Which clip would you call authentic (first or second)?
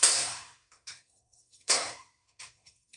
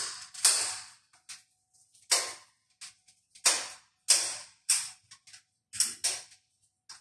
second